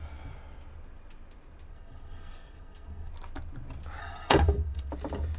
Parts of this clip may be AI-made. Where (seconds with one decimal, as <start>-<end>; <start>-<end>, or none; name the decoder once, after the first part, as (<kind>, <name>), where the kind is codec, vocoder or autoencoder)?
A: 1.7-3.1 (codec, SNAC); 4.0-4.9